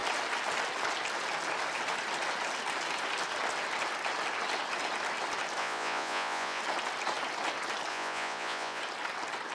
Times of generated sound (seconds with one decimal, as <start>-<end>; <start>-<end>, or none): 5.6-6.6; 7.9-8.8